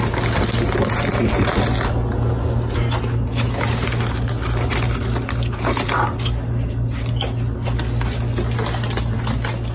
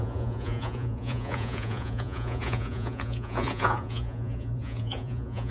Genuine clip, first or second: first